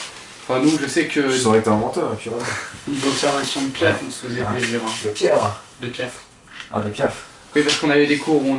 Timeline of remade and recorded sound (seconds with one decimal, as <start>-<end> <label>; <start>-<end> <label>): 0.0-2.3 recorded; 2.3-7.3 remade; 7.3-8.6 recorded